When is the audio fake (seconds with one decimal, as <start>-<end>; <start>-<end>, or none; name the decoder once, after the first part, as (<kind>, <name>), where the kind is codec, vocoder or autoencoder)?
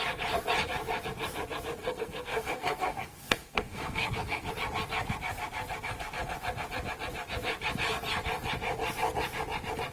1.8-4.5 (codec, SNAC)